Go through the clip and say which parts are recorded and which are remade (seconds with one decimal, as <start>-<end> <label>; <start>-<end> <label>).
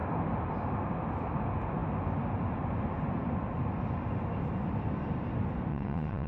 0.0-5.7 recorded; 5.7-6.3 remade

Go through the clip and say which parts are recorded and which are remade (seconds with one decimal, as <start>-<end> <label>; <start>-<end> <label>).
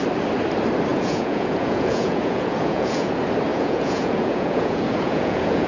0.0-0.9 recorded; 0.9-3.1 remade; 3.1-3.5 recorded; 3.5-5.7 remade